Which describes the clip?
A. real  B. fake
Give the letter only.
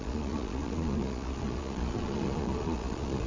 B